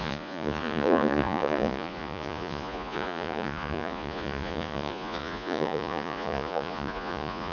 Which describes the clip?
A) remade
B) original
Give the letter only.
A